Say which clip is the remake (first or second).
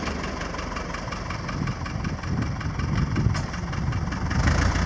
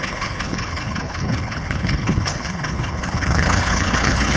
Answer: second